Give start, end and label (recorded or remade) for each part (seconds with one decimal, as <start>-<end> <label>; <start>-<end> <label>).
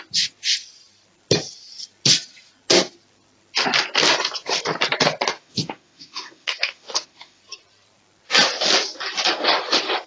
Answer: 0.0-5.4 recorded; 5.4-7.4 remade; 7.4-10.1 recorded